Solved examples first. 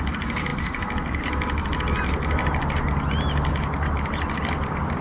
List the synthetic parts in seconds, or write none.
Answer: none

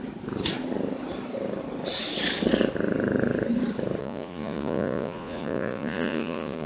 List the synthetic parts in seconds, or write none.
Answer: 4.0-6.7 (vocoder, Vocos)

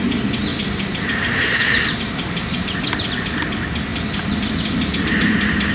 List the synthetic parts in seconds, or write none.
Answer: 0.5-2.7 (vocoder, BigVGAN v2)